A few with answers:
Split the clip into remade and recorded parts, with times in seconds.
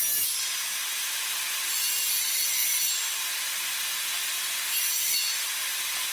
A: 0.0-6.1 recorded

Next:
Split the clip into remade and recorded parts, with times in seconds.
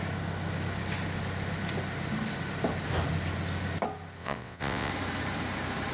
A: 0.0-4.2 recorded; 4.2-4.9 remade; 4.9-5.9 recorded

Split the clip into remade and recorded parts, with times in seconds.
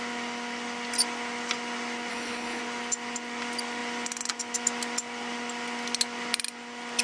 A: 0.0-2.1 recorded; 2.1-2.6 remade; 2.6-7.0 recorded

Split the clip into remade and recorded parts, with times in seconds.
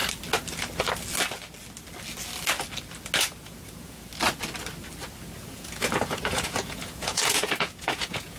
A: 0.0-3.2 recorded; 3.2-4.1 remade; 4.1-5.4 recorded; 5.4-8.4 remade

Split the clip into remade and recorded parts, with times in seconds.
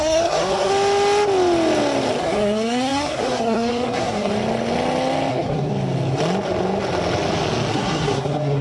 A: 0.0-0.7 remade; 0.7-2.2 recorded; 2.2-4.3 remade; 4.3-5.3 recorded; 5.3-5.7 remade; 5.7-7.7 recorded; 7.7-8.6 remade